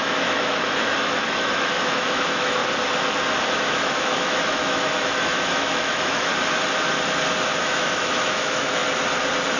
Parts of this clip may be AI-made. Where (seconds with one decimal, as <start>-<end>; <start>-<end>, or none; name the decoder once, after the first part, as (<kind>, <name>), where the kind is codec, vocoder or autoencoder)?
0.0-2.6 (autoencoder, DAC-VAE); 3.5-6.3; 7.6-8.8

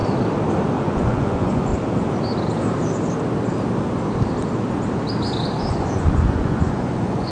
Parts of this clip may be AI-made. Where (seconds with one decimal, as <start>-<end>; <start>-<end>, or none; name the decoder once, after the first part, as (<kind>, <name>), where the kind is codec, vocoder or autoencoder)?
0.8-1.7 (vocoder, Vocos); 5.7-7.3